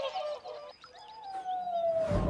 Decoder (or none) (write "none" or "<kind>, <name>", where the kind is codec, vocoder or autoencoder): none